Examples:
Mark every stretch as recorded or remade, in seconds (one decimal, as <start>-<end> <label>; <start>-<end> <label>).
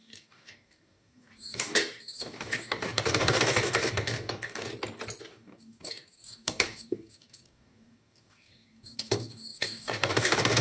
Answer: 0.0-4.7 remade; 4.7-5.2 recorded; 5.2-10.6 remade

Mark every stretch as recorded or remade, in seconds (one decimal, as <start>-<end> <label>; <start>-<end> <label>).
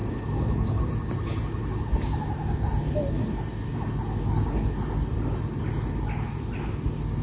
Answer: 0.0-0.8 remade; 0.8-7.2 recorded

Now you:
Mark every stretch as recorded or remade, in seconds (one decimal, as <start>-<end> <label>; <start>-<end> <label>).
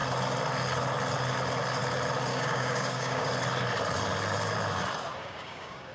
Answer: 0.0-2.3 recorded; 2.3-3.3 remade; 3.3-5.2 recorded; 5.2-5.9 remade